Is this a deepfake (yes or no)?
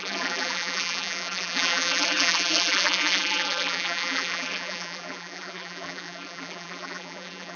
yes